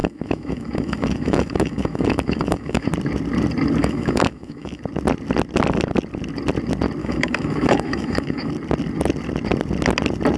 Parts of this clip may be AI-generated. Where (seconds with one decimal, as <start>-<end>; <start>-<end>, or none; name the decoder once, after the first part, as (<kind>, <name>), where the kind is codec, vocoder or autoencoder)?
0.0-2.9 (autoencoder, DAC-VAE); 3.8-4.8; 7.0-8.5